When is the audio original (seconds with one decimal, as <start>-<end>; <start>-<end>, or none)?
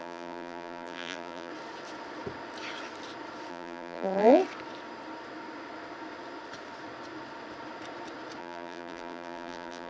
1.5-3.5; 4.4-8.4